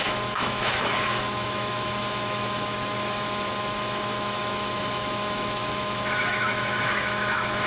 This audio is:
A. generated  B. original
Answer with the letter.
A